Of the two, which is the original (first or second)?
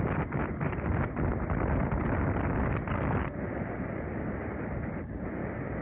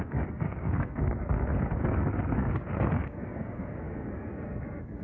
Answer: first